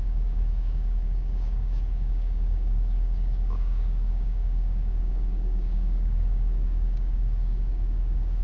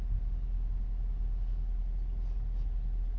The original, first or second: second